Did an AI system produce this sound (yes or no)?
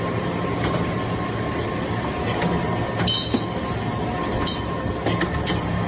no